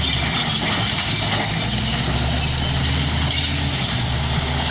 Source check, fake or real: real